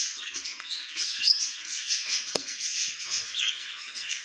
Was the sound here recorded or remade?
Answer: remade